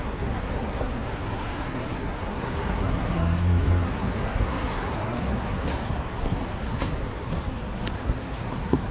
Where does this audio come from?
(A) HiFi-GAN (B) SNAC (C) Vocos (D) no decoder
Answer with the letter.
B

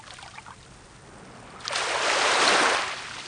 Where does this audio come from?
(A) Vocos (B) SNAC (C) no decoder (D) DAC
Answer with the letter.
C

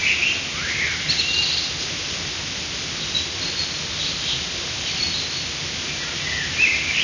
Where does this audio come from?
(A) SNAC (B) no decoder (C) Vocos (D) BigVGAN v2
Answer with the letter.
B